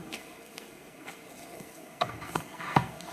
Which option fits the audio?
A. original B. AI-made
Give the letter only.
B